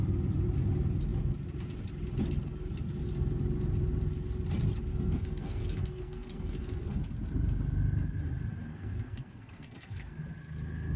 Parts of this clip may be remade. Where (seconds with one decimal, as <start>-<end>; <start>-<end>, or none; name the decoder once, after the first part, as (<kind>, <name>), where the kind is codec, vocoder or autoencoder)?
4.9-7.0 (codec, SNAC); 8.7-10.2